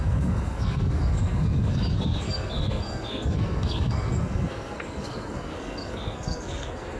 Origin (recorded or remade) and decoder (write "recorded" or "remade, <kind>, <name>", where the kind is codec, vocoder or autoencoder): remade, codec, SNAC